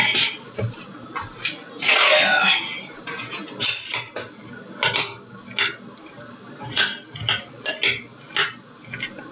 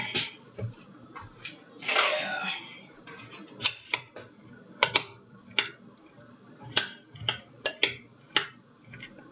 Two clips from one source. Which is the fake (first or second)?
second